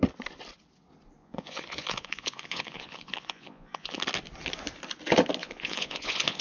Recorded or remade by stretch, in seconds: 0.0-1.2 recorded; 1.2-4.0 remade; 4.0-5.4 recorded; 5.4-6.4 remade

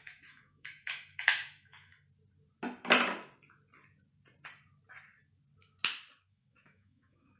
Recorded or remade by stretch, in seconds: 0.0-1.9 remade; 1.9-6.3 recorded; 6.3-7.4 remade

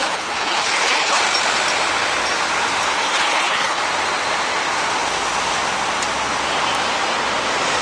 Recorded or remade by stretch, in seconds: 0.0-1.2 remade; 1.2-3.0 recorded; 3.0-3.8 remade; 3.8-7.8 recorded

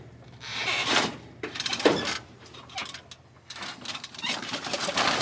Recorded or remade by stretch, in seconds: 0.0-2.8 remade; 2.8-3.9 recorded; 3.9-5.2 remade